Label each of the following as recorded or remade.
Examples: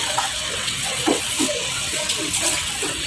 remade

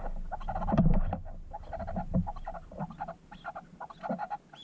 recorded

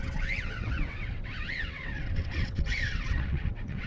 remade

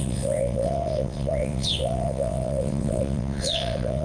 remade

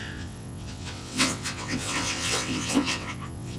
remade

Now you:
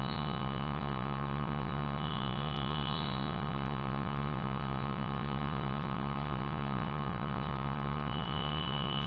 remade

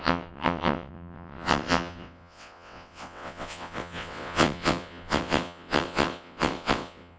remade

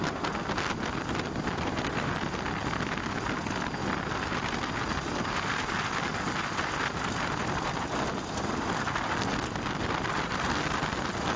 recorded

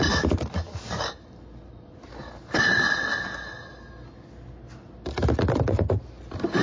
recorded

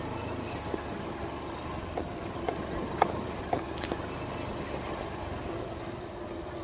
recorded